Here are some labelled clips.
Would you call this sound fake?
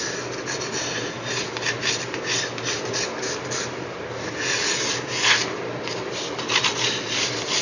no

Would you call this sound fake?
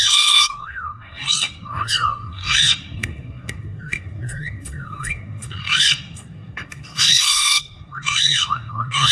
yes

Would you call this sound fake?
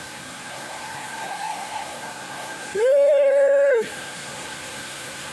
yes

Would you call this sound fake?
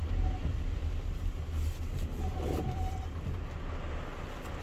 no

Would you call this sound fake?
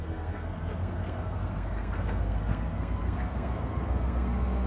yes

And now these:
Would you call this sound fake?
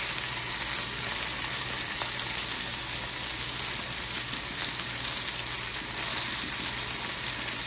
no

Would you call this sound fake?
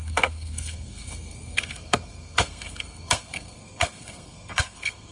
yes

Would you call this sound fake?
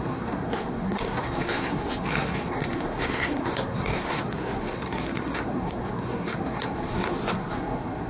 yes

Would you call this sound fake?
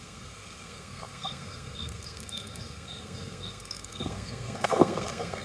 yes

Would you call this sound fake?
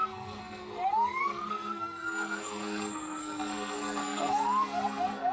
yes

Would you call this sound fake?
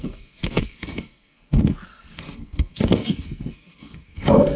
yes